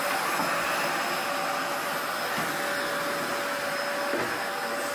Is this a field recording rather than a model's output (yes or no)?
yes